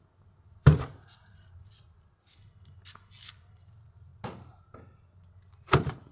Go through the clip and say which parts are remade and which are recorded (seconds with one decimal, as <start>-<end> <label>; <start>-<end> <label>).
0.0-6.1 recorded